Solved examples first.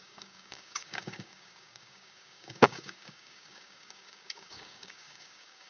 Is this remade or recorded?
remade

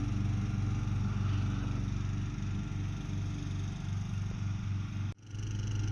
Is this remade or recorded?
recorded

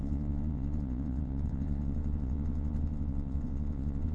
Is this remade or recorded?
remade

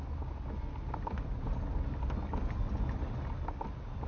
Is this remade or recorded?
recorded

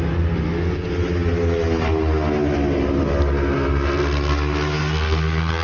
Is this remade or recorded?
recorded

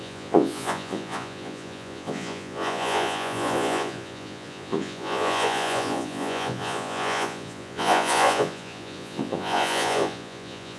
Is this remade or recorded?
remade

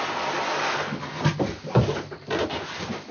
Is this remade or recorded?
recorded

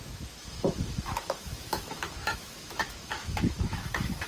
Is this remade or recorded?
remade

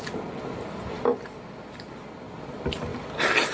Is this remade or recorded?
recorded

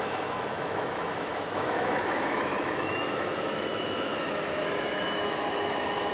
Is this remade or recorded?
remade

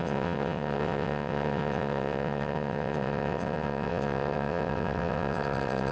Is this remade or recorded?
remade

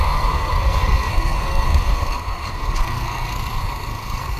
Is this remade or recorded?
remade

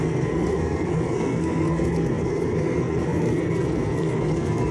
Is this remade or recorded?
remade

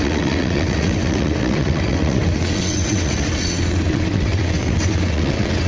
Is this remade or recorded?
remade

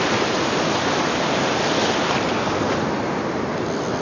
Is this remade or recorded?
recorded